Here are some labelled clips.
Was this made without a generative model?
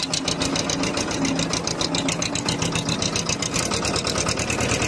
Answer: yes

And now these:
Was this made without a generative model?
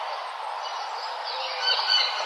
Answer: yes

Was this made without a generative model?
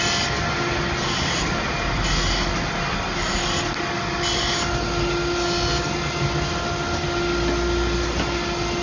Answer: yes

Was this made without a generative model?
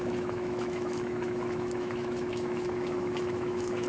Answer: no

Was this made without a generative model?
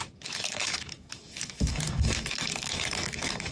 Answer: no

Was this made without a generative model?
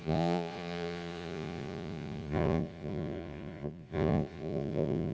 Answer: no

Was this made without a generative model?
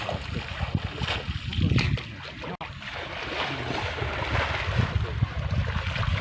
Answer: yes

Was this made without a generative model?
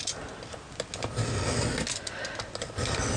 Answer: yes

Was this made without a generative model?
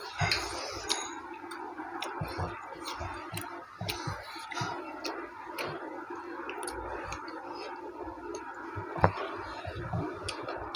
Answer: yes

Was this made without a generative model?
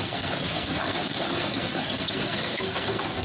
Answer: no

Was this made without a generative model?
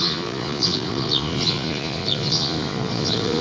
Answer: no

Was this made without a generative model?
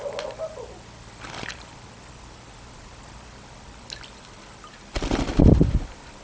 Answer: yes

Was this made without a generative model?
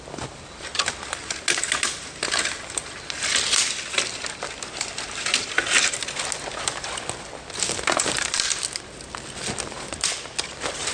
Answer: yes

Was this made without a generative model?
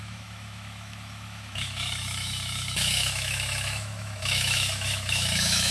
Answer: no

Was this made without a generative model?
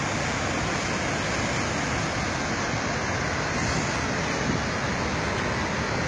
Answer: yes